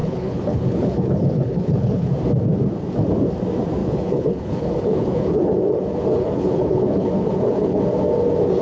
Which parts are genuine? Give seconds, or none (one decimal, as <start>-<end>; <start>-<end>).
2.1-3.8; 7.8-8.6